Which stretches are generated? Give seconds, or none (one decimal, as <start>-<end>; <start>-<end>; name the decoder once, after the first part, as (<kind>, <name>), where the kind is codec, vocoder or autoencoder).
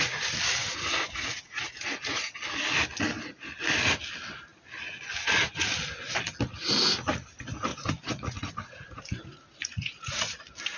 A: 0.6-2.2 (vocoder, Vocos); 7.7-10.4